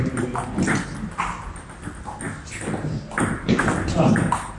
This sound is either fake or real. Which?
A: real